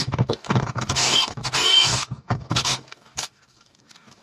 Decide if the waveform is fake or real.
fake